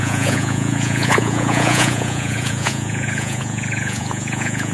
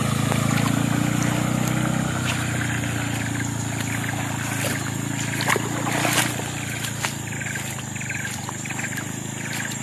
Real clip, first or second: second